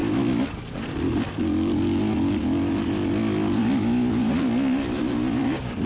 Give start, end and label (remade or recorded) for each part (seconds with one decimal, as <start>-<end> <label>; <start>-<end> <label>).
0.0-5.9 recorded